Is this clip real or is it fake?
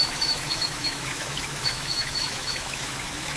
fake